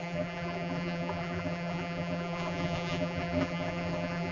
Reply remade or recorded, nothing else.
remade